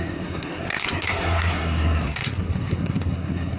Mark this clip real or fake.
fake